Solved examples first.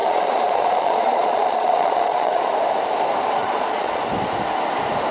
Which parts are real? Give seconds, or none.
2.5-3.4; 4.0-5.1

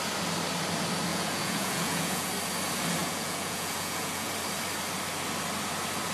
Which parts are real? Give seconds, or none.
0.0-1.1; 2.3-3.0; 4.3-6.1

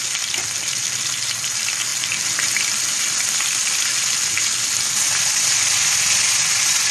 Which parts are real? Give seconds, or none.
0.0-6.9

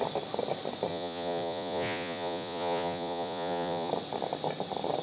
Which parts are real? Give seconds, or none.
0.0-0.9; 3.9-5.0

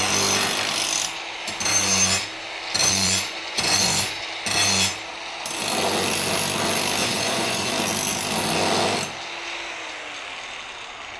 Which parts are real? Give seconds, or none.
0.0-2.8; 4.2-7.0; 7.7-11.2

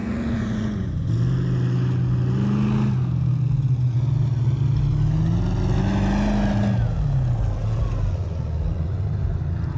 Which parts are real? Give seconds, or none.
1.1-9.8

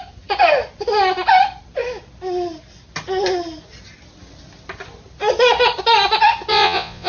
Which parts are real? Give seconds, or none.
0.0-6.5